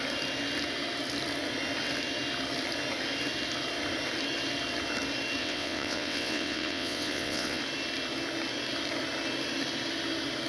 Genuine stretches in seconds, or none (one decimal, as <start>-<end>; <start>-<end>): 0.0-5.4; 7.6-10.5